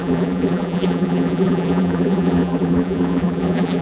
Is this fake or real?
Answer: fake